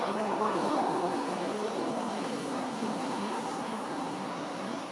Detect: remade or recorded remade